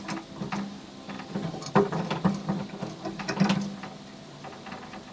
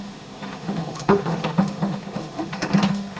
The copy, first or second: second